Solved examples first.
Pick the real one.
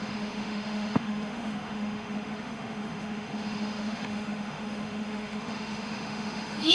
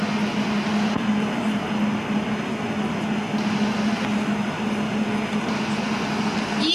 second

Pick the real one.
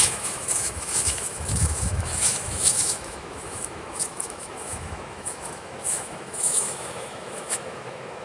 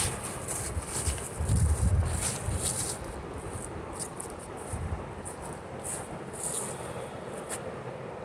second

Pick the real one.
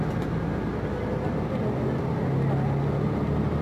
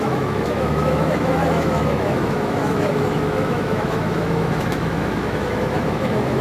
first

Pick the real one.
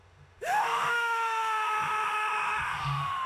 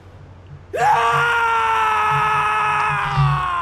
second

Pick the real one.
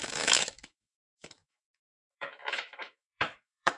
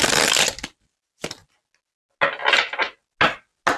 second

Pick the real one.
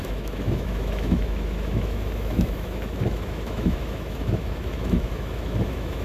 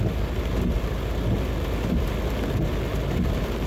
second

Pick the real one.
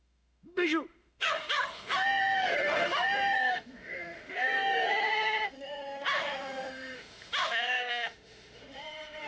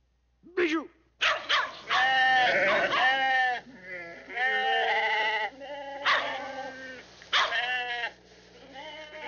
second